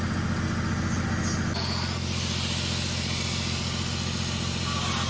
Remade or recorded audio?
recorded